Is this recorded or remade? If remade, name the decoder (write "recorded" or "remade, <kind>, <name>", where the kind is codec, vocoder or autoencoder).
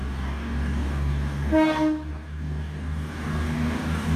remade, codec, DAC